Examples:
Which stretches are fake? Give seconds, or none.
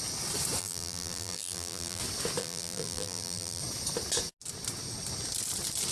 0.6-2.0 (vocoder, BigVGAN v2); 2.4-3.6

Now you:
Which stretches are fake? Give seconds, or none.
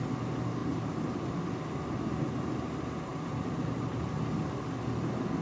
0.6-1.4 (vocoder, BigVGAN v2)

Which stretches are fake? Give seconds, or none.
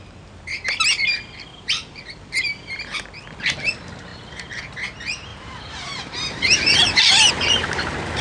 1.5-2.3 (vocoder, BigVGAN v2); 4.1-4.6; 5.3-7.3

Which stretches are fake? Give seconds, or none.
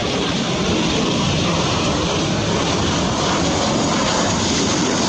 0.7-5.1 (vocoder, BigVGAN v2)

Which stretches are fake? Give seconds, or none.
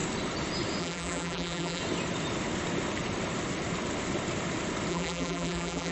0.8-1.8 (vocoder, BigVGAN v2); 4.9-5.9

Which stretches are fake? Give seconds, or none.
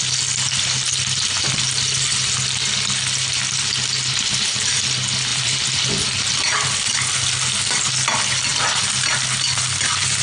5.3-6.9 (vocoder, BigVGAN v2)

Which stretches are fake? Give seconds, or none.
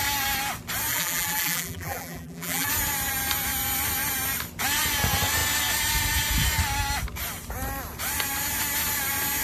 0.9-2.7 (vocoder, BigVGAN v2)